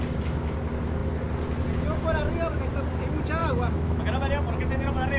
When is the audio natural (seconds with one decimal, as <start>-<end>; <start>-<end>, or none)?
0.0-3.4; 4.0-5.2